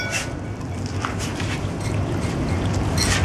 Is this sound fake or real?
real